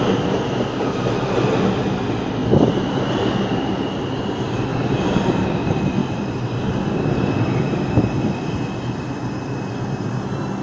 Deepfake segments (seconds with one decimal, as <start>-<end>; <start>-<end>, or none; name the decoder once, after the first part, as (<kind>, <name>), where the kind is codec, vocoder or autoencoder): 4.7-5.6 (vocoder, BigVGAN v2); 6.0-6.6